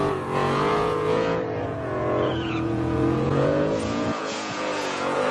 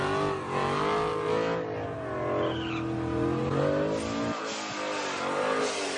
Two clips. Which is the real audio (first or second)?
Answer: second